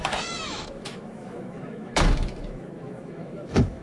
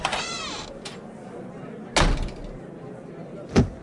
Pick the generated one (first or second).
first